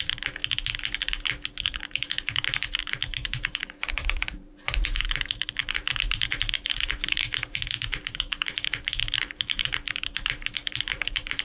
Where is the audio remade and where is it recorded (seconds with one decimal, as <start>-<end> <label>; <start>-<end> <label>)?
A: 0.0-0.4 remade; 0.4-1.6 recorded; 1.6-11.4 remade

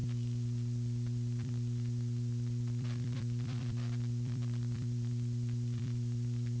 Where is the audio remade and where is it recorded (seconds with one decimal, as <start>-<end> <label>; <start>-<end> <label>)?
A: 0.0-6.6 remade

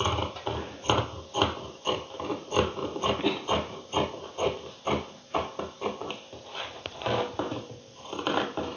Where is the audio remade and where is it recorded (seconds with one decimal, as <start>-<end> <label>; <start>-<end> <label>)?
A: 0.0-8.8 recorded

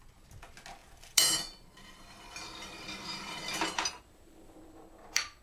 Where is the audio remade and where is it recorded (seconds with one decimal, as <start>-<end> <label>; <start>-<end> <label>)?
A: 0.0-0.8 recorded; 0.8-4.0 remade; 4.0-5.4 recorded

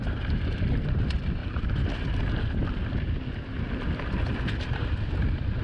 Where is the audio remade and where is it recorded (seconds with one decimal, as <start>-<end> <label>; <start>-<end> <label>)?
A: 0.0-1.4 recorded; 1.4-2.2 remade; 2.2-5.6 recorded

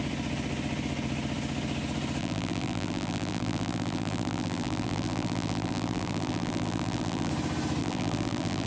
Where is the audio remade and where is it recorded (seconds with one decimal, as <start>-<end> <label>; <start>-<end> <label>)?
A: 0.0-2.2 recorded; 2.2-7.3 remade; 7.3-7.8 recorded; 7.8-8.7 remade

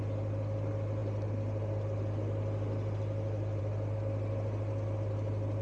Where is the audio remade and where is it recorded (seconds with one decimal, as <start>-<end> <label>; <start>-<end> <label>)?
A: 0.0-5.6 recorded